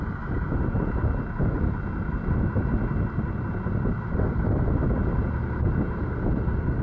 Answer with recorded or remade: recorded